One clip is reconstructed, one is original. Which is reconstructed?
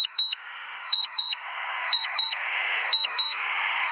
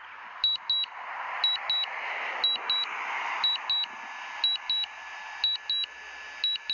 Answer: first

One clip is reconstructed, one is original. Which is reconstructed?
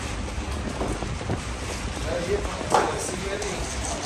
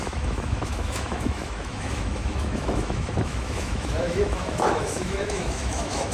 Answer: second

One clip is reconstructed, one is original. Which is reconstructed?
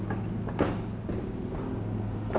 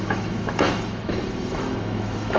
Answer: second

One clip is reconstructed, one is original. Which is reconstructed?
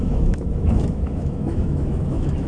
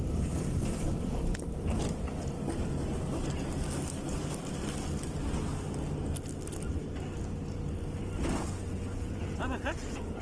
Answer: first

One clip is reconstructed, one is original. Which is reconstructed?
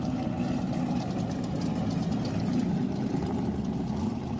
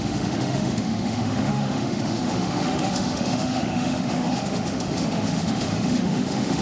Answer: second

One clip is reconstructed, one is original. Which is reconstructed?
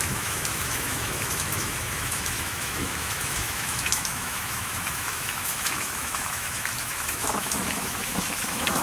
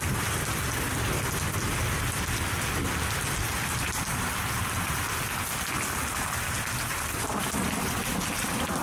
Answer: first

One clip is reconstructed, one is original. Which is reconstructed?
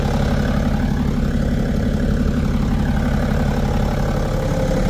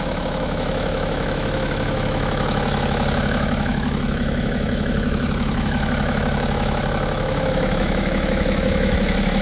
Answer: second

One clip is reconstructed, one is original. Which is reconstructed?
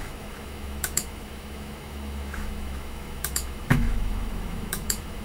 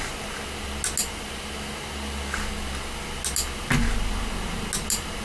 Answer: first